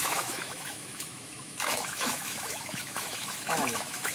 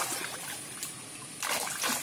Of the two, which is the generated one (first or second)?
first